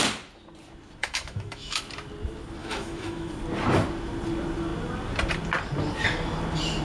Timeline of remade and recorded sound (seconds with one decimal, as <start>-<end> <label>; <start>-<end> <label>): 0.0-1.0 recorded; 1.0-1.8 remade; 1.8-2.6 recorded; 2.6-3.3 remade; 3.3-6.8 recorded